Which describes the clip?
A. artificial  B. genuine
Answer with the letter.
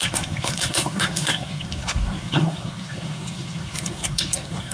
A